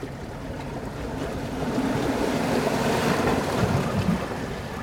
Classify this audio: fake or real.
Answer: real